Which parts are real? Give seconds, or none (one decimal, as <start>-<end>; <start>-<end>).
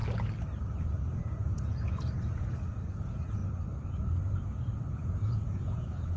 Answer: 0.0-0.9; 3.4-4.9